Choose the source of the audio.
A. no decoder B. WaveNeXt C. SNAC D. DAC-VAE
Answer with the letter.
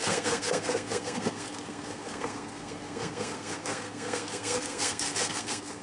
C